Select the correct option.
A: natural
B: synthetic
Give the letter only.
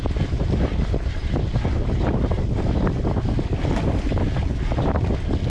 A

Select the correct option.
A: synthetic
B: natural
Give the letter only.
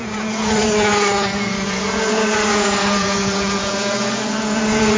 A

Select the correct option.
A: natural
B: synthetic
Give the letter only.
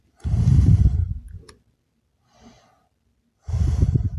A